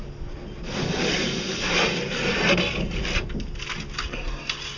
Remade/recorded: recorded